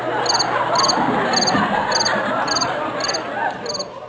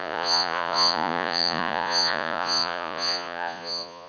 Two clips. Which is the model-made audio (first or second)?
second